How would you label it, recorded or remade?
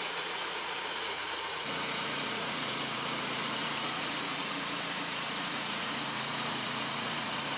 remade